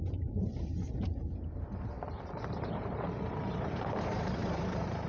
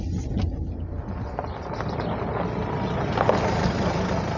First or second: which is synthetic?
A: first